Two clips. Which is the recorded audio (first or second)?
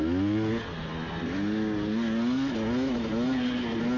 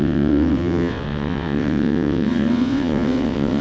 first